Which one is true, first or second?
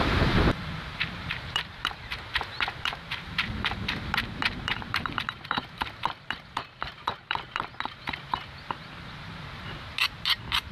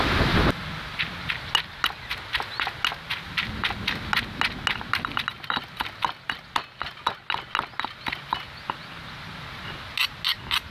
second